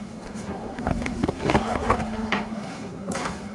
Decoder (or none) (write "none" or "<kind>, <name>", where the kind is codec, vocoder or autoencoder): codec, SNAC